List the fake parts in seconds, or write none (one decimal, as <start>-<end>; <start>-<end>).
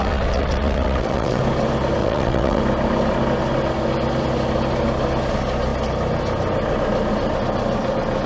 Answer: 0.0-1.4; 2.0-2.6